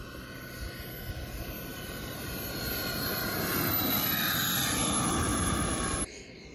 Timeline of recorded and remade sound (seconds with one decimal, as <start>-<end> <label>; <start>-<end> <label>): 0.0-1.7 recorded; 1.7-2.3 remade; 2.3-5.3 recorded; 5.3-6.0 remade; 6.0-6.5 recorded